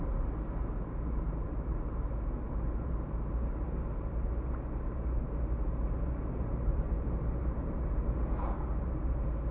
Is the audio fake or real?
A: fake